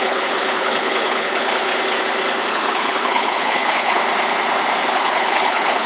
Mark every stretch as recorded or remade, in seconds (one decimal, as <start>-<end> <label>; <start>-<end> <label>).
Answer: 0.0-1.7 remade; 1.7-2.5 recorded; 2.5-4.0 remade; 4.0-4.9 recorded; 4.9-5.9 remade